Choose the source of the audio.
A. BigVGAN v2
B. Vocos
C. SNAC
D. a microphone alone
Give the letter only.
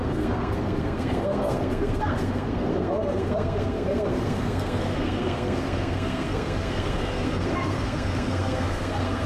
C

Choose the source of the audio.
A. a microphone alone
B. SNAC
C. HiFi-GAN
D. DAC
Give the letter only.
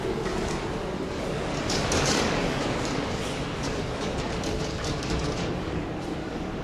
D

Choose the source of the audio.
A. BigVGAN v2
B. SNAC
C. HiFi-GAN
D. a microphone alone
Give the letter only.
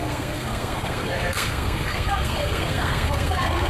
B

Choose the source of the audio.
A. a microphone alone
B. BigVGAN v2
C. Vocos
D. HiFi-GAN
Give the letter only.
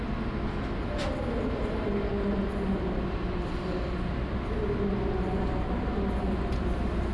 A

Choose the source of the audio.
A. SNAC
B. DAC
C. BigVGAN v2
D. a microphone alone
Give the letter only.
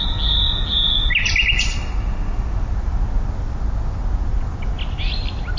D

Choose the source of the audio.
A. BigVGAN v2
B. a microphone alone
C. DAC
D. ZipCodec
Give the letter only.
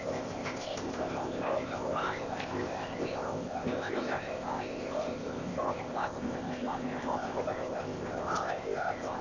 D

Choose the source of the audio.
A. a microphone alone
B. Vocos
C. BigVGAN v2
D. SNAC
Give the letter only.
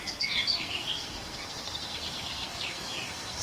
D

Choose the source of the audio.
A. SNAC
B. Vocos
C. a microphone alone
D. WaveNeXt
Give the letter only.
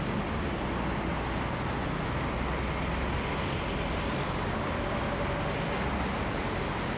C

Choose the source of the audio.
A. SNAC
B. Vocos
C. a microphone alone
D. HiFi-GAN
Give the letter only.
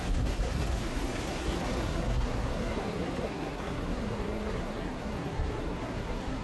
A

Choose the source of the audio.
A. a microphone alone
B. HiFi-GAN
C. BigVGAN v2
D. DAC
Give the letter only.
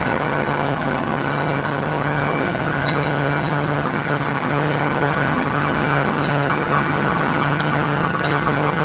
B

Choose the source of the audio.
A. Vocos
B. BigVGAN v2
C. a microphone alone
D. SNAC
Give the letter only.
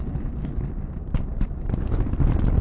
B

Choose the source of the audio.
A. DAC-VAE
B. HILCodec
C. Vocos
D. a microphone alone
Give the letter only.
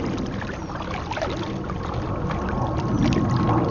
D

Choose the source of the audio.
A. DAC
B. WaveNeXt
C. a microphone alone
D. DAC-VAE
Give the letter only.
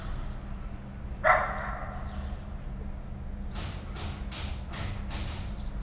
C